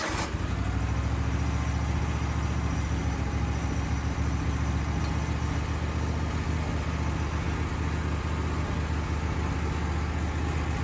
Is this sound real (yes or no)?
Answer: yes